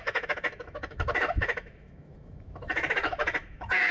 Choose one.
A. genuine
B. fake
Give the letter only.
B